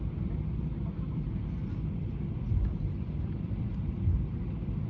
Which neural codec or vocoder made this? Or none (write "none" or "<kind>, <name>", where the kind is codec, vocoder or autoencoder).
none